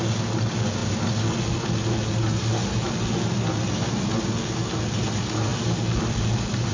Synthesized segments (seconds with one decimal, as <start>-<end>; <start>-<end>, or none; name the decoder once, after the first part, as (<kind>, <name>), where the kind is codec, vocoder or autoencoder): none